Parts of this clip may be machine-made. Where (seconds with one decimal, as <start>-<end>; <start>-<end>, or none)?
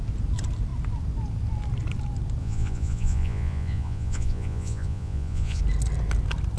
2.4-5.6